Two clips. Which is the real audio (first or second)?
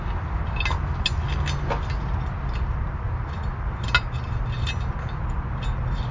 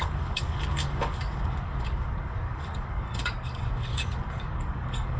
first